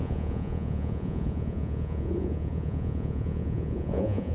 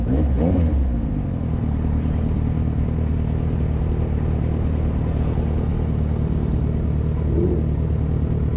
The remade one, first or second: first